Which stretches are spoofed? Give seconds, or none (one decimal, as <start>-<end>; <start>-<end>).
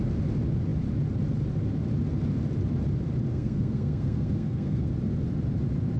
3.3-4.9